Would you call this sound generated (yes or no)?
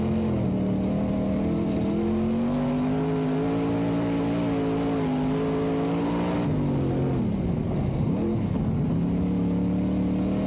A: no